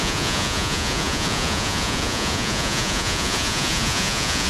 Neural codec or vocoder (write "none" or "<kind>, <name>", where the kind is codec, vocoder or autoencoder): vocoder, Vocos